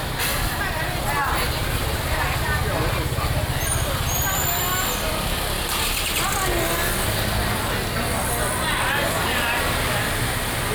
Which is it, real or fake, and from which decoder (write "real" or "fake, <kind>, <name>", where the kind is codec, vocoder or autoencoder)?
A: real